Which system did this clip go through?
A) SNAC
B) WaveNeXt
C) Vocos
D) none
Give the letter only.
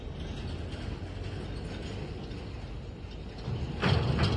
D